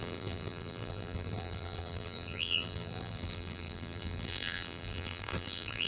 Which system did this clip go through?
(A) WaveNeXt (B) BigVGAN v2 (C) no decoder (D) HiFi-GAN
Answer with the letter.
B